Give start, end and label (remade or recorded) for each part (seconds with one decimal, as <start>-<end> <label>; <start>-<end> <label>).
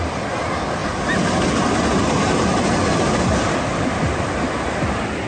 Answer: 0.0-5.3 recorded